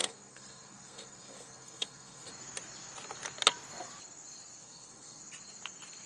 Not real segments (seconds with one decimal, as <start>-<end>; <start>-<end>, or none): 0.0-2.3; 4.6-5.2